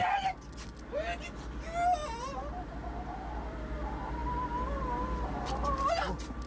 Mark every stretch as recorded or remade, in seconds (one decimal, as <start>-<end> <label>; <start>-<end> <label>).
0.0-2.0 recorded; 2.0-3.6 remade; 3.6-6.5 recorded